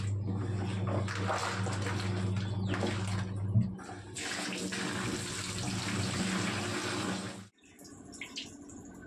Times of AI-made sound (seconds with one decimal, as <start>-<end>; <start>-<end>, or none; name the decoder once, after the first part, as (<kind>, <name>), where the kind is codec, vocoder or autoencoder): none